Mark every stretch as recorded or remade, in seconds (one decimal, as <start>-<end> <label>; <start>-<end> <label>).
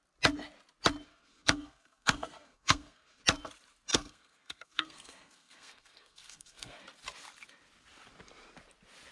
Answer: 0.0-1.1 recorded; 1.1-3.2 remade; 3.2-3.9 recorded; 3.9-6.8 remade; 6.8-9.1 recorded